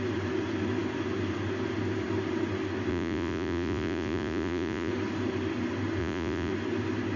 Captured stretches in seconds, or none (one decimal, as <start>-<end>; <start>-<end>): 0.0-2.9; 4.9-6.0; 6.5-7.2